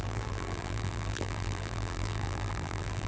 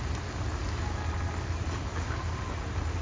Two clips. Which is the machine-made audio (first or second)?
first